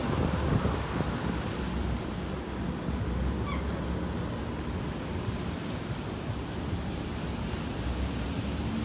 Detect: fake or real real